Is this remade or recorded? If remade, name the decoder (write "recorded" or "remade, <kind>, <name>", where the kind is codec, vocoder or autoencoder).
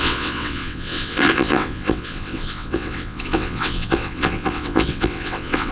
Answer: remade, vocoder, WaveNeXt